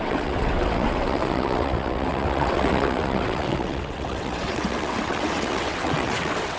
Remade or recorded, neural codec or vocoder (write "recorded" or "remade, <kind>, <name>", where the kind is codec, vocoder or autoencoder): remade, vocoder, WaveNeXt